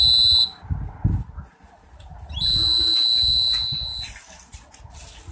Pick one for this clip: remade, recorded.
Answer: recorded